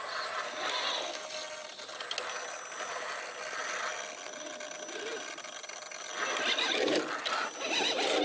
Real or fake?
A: real